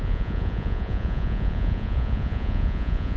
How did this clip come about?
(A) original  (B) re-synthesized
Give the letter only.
B